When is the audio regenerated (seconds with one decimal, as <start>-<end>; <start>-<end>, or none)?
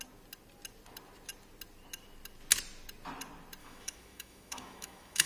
3.6-5.3